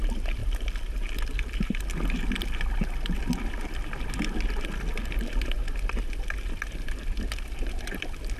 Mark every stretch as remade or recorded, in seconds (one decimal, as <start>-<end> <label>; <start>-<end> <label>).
0.0-8.4 recorded